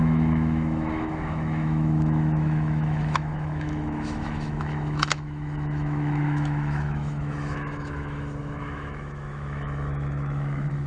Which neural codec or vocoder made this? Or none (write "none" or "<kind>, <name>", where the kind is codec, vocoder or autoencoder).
autoencoder, DAC-VAE